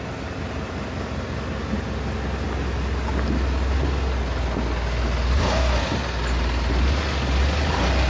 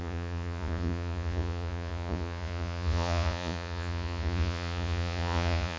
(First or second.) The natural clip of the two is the first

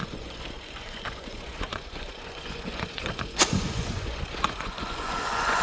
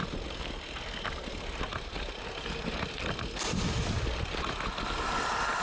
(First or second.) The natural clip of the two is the second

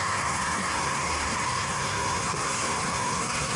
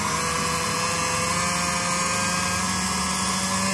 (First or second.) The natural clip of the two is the second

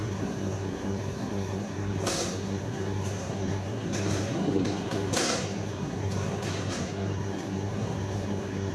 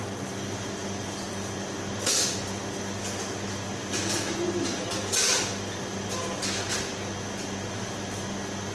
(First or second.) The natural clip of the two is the second